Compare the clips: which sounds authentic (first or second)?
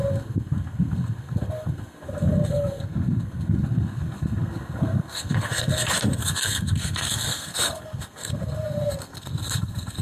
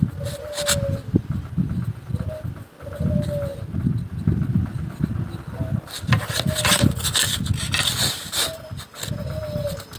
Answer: second